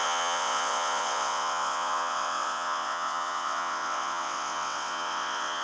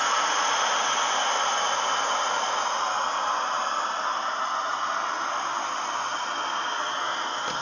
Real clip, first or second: second